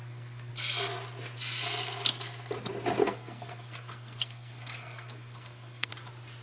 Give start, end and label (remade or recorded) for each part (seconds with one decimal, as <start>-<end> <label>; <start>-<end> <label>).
0.0-0.5 remade; 0.5-3.0 recorded; 3.0-5.9 remade; 5.9-6.4 recorded